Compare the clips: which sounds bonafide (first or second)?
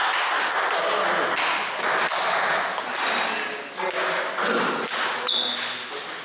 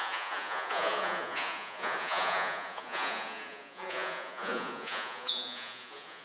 first